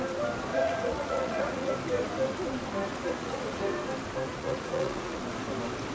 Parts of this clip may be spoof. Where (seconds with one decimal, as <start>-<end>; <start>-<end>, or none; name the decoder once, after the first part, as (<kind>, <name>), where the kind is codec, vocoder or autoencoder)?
0.5-1.7 (vocoder, Vocos); 2.9-3.6; 4.3-5.2